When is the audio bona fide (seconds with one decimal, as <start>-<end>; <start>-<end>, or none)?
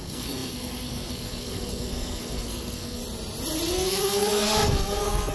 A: 3.0-3.7